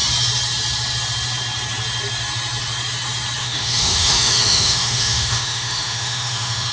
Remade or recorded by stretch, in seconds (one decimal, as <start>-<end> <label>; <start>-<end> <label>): 0.0-3.4 recorded; 3.4-6.7 remade